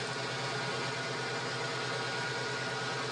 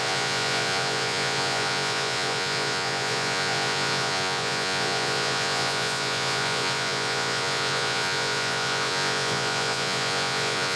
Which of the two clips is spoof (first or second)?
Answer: second